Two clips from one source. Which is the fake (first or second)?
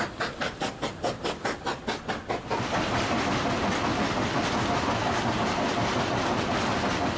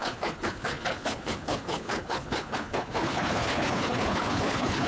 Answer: second